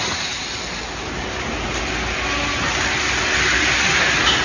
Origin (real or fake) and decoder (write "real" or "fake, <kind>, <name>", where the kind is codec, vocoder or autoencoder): real